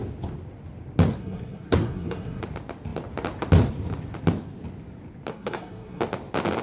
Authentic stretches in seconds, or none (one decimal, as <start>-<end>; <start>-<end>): 0.0-1.2; 2.4-5.3; 6.0-6.6